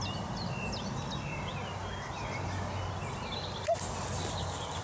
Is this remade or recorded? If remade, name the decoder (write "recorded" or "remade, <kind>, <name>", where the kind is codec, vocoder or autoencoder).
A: recorded